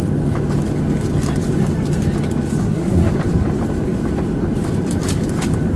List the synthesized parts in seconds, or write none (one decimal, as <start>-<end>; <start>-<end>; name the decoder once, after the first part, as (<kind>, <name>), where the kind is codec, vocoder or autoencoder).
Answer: 2.6-3.1 (codec, SNAC)